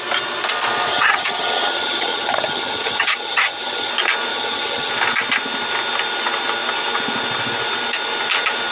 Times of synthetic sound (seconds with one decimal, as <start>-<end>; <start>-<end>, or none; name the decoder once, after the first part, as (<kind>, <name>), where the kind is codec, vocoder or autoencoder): 0.9-3.9 (vocoder, HiFi-GAN); 4.3-4.9